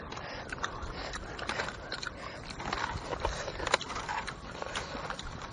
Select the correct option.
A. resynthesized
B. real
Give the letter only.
B